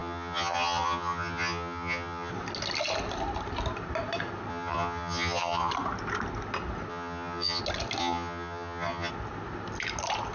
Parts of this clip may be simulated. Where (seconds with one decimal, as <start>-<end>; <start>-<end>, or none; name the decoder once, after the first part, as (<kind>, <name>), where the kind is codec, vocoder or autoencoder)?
0.0-2.3 (vocoder, HiFi-GAN); 4.5-5.7; 6.9-7.6; 8.0-9.1